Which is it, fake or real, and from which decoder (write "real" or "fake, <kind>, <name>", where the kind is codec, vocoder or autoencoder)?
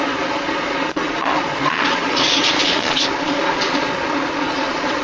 fake, vocoder, Vocos